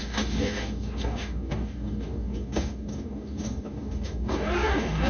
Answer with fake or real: fake